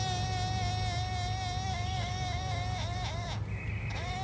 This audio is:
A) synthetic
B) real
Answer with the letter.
B